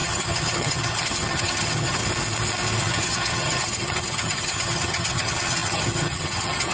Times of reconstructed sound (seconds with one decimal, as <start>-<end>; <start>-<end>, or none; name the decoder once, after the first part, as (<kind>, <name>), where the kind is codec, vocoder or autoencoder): 0.0-2.0 (vocoder, HiFi-GAN); 2.8-6.7